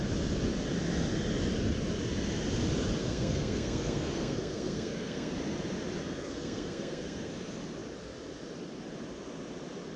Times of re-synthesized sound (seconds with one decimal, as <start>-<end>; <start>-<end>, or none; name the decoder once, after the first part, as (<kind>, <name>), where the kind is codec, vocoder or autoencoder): 3.0-5.3 (codec, SNAC); 6.0-7.3